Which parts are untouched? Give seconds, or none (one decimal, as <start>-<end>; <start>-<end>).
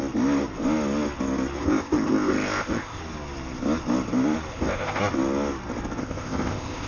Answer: 0.0-1.6; 3.0-4.5; 5.0-6.0